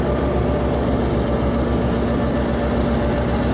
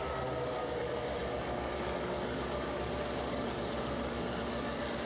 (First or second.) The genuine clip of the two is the first